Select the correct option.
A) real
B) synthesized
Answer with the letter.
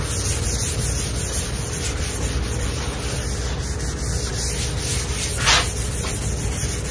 A